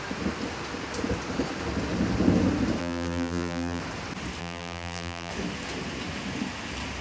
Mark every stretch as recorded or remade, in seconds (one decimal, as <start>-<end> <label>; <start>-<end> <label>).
0.0-2.8 recorded; 2.8-3.8 remade; 3.8-4.4 recorded; 4.4-5.3 remade; 5.3-7.0 recorded